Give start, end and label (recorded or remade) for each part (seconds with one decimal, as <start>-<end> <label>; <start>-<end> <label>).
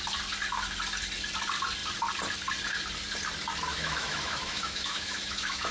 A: 0.0-3.7 recorded; 3.7-5.7 remade